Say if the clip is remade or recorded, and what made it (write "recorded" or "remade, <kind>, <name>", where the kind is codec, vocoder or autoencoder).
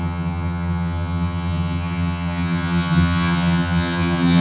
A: remade, vocoder, HiFi-GAN